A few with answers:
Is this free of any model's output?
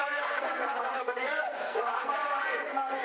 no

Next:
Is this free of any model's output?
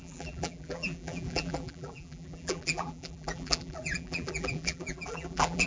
no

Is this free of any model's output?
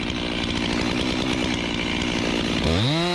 yes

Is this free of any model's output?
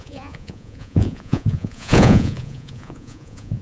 no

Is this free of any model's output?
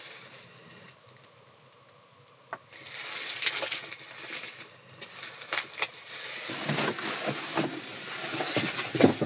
yes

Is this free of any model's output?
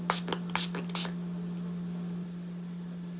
yes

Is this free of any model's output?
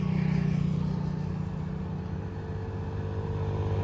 yes